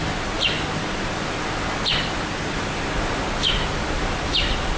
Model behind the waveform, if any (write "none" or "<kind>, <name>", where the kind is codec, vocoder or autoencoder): none